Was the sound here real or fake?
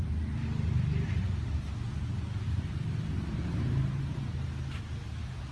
real